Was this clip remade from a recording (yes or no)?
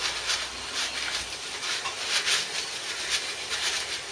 no